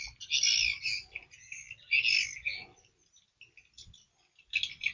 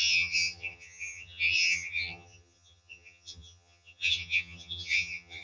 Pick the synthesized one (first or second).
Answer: second